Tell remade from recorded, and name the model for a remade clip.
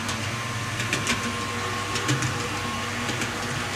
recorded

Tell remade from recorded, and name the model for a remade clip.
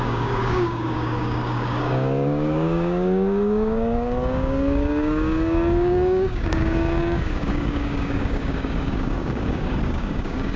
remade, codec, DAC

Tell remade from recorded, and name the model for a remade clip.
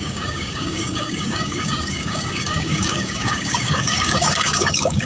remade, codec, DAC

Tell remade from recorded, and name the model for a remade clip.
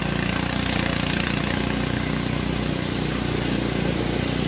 recorded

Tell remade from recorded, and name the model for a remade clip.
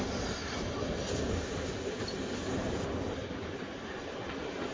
recorded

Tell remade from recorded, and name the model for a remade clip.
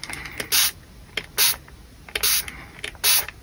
recorded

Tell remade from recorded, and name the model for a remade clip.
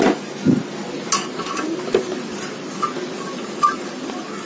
recorded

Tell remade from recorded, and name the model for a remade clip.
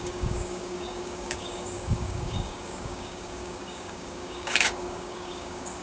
remade, codec, DAC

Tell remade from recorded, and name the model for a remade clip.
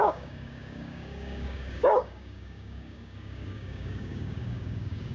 remade, codec, DAC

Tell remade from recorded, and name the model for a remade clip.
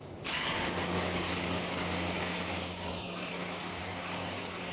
remade, codec, DAC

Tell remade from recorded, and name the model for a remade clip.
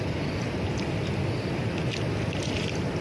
recorded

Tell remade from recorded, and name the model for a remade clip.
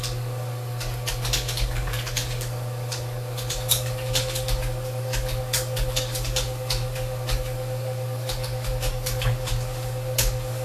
remade, codec, DAC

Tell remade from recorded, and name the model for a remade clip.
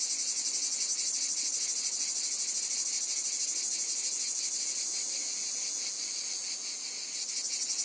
recorded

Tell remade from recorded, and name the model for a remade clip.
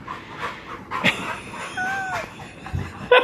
recorded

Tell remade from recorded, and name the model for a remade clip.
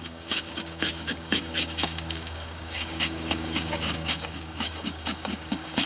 remade, codec, DAC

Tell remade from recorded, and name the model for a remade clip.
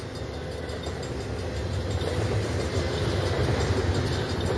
recorded